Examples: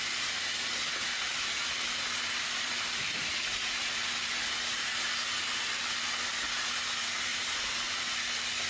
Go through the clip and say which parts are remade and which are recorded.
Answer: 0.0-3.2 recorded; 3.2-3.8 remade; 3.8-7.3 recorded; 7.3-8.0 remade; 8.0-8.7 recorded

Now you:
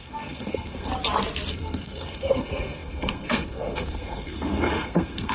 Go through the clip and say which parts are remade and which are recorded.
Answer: 0.0-0.9 remade; 0.9-1.5 recorded; 1.5-5.3 remade

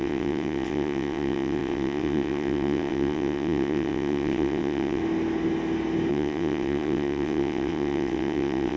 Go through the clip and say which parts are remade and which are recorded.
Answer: 0.0-5.0 remade; 5.0-6.1 recorded; 6.1-8.8 remade

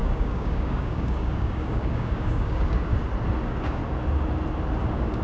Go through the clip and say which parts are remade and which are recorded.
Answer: 0.0-2.9 remade; 2.9-3.4 recorded; 3.4-3.8 remade; 3.8-4.8 recorded; 4.8-5.2 remade